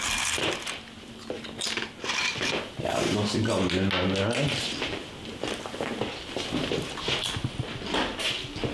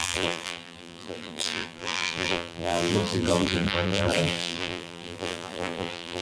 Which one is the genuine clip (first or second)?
first